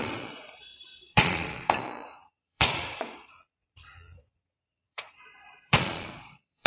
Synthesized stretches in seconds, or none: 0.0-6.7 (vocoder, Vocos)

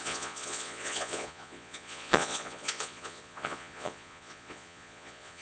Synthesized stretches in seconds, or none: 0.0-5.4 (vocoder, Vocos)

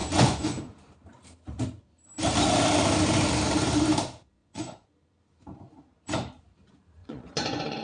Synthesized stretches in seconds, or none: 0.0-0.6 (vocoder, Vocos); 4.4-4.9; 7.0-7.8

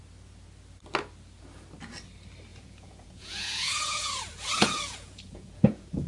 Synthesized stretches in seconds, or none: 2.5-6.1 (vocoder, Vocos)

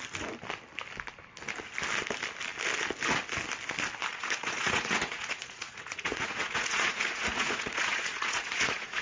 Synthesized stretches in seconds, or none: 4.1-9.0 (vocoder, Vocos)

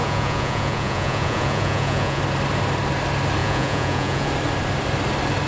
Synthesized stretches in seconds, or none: 0.0-2.2 (vocoder, Vocos); 3.4-4.3

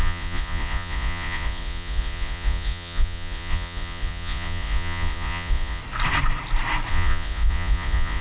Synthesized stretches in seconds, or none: 0.0-5.8 (vocoder, Vocos); 6.9-8.2